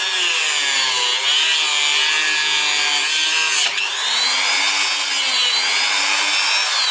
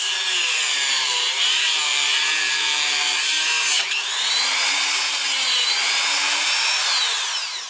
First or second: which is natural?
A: first